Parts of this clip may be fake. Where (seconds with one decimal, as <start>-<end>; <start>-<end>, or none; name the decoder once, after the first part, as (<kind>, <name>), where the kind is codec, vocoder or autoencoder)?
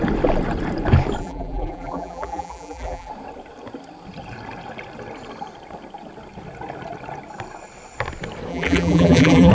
1.2-3.1 (vocoder, BigVGAN v2); 8.5-9.5